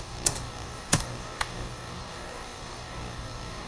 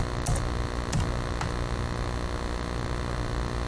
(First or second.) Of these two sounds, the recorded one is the second